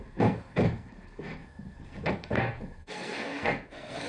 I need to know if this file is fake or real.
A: fake